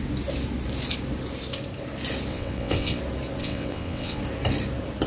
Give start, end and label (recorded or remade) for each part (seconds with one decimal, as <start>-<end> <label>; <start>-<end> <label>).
0.0-2.3 recorded; 2.3-3.0 remade; 3.0-3.4 recorded; 3.4-4.2 remade; 4.2-5.1 recorded